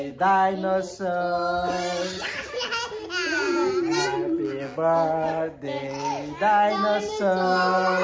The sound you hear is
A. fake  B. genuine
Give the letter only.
B